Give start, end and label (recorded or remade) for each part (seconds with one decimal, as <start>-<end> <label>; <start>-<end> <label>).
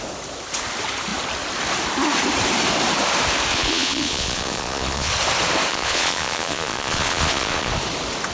0.0-3.5 recorded; 3.5-5.1 remade; 5.1-5.7 recorded; 5.7-7.7 remade; 7.7-8.3 recorded